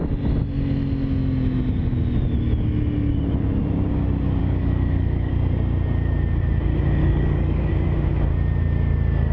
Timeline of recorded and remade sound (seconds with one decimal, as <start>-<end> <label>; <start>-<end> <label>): 0.0-4.4 recorded; 4.4-5.3 remade; 5.3-7.0 recorded; 7.0-7.7 remade; 7.7-9.3 recorded